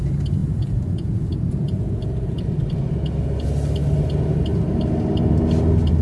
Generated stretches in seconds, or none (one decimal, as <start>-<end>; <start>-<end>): 0.4-2.4